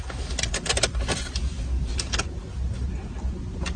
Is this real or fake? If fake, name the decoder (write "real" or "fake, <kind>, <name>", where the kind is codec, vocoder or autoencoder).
real